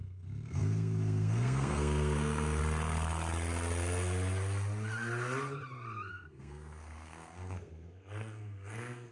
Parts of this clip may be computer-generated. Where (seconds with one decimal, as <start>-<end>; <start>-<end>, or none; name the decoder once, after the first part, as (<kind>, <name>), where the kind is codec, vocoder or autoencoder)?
0.0-2.6 (codec, SNAC); 6.1-9.1